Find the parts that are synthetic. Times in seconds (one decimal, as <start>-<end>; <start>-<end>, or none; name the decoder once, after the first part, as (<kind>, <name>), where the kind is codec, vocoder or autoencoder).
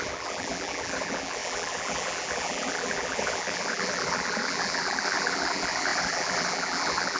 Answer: 0.0-7.2 (vocoder, BigVGAN v2)